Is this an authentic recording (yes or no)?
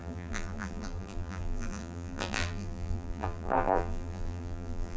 no